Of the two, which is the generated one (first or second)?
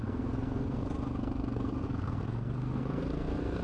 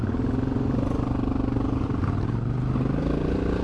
first